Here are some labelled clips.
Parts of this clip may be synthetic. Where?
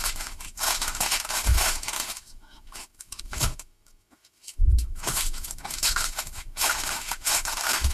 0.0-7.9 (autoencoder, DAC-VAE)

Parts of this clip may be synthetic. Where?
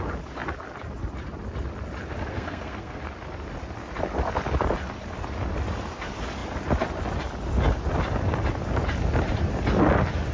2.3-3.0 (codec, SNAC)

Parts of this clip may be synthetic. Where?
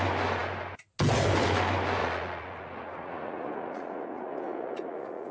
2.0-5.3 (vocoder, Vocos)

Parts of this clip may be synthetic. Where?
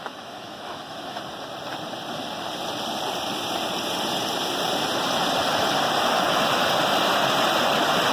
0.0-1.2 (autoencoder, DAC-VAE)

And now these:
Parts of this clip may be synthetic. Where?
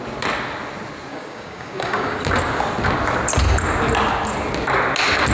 1.1-2.2 (codec, DAC)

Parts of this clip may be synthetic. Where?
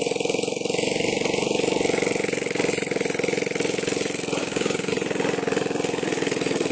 4.4-4.9 (codec, DAC)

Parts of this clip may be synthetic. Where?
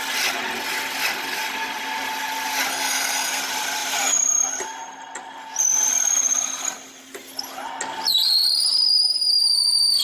2.7-3.4 (codec, SNAC)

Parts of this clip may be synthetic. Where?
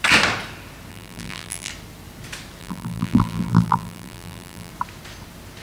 0.9-1.7 (vocoder, BigVGAN v2); 2.6-4.7